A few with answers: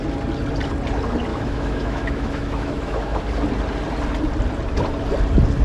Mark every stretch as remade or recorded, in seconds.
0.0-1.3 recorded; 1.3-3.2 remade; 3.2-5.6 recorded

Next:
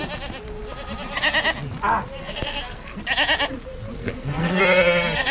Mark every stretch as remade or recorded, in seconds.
0.0-2.2 recorded; 2.2-3.0 remade; 3.0-4.0 recorded; 4.0-4.6 remade; 4.6-5.3 recorded

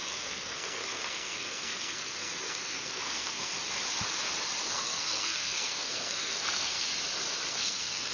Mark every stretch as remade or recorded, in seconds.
0.0-3.5 remade; 3.5-4.7 recorded; 4.7-6.9 remade; 6.9-7.5 recorded; 7.5-8.1 remade